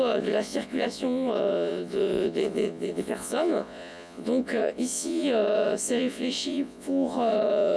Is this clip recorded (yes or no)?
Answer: no